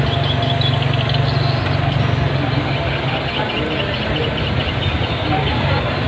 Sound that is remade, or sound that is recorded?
recorded